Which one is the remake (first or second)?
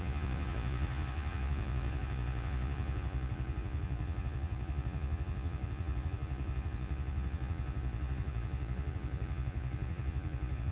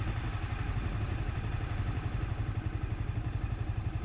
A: first